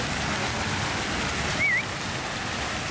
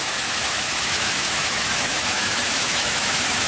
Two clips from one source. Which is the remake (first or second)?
second